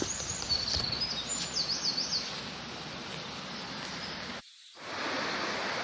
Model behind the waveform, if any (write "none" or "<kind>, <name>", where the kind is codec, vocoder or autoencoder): none